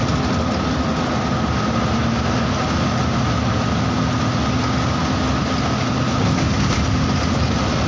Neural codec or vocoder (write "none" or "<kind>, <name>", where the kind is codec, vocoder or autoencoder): none